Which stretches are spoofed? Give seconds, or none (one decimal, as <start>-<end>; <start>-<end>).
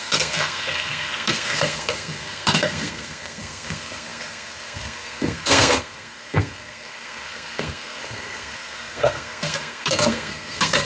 0.0-10.9